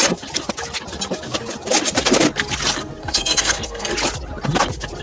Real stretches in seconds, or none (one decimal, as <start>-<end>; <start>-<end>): 0.0-3.0; 3.9-5.0